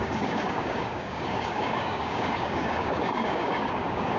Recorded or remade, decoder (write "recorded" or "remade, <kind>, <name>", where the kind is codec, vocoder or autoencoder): remade, codec, DAC